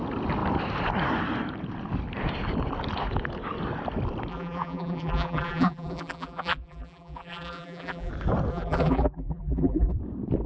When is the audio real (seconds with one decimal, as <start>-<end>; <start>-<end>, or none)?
0.0-4.3; 8.1-8.5; 9.9-10.5